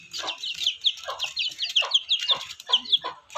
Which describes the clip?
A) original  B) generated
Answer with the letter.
A